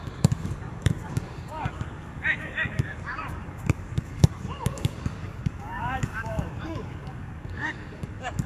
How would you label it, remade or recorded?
remade